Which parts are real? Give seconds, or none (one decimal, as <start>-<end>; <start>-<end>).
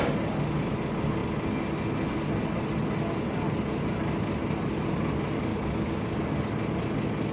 0.0-5.5; 6.5-7.3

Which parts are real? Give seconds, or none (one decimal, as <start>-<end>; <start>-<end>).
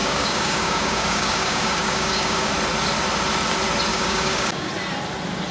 2.5-3.9; 4.7-5.5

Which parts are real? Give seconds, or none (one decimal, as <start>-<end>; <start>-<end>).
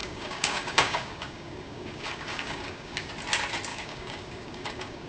3.1-3.7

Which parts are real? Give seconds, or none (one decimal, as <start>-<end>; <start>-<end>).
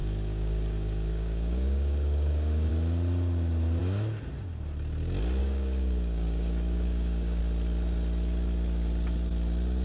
2.7-5.4; 7.4-9.8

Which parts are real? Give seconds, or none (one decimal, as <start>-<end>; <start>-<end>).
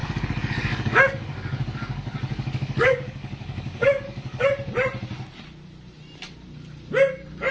4.5-7.5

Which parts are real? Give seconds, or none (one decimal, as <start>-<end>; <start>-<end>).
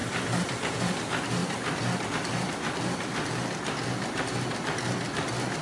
0.0-5.6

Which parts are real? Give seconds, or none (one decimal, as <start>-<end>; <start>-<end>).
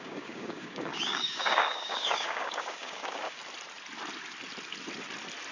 3.4-5.5